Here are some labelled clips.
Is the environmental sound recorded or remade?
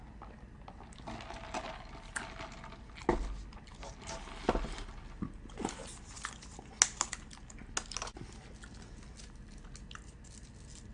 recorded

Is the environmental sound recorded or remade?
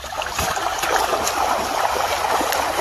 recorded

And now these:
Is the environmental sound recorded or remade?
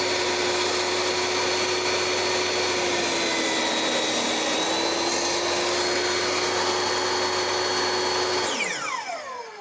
recorded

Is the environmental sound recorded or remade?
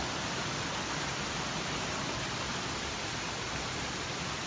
recorded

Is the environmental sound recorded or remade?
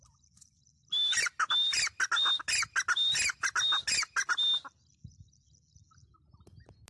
recorded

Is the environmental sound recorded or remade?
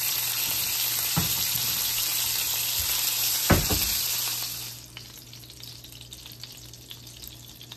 recorded